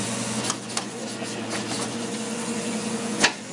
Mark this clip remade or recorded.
remade